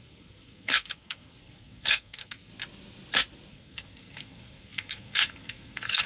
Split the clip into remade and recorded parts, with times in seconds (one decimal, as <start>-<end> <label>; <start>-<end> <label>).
0.0-2.5 remade; 2.5-3.5 recorded; 3.5-6.1 remade